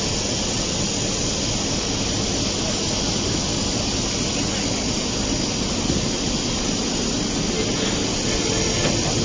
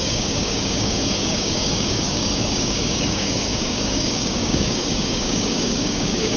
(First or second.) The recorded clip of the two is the first